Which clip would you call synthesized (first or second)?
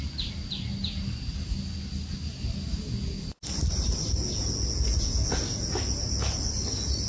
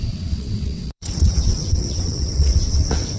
second